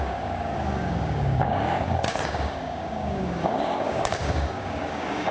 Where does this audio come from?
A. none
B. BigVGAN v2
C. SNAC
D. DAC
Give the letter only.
D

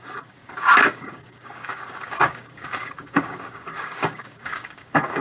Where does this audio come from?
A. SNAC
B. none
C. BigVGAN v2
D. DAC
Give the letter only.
D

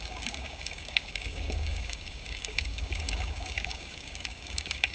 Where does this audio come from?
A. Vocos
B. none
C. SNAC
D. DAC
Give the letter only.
D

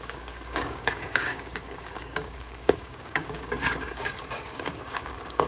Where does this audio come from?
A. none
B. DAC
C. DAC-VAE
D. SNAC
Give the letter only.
B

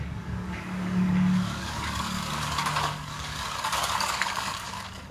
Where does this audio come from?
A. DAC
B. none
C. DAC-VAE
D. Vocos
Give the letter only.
A